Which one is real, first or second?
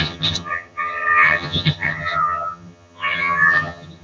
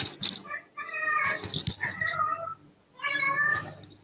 second